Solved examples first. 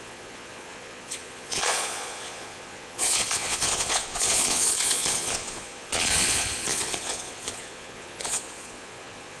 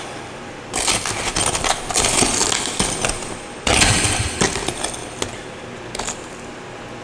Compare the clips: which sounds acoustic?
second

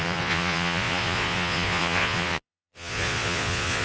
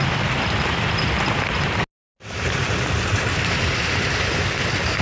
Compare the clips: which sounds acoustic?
second